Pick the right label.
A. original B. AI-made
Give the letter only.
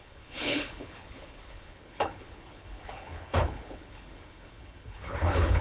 B